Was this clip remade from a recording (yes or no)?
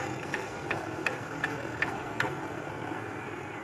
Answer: yes